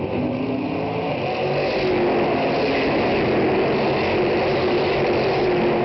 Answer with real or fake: real